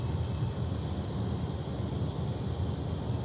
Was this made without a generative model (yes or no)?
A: yes